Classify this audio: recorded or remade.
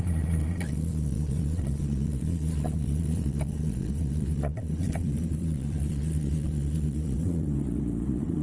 remade